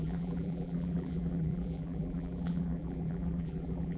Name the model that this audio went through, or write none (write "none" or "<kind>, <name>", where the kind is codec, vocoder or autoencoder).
vocoder, BigVGAN v2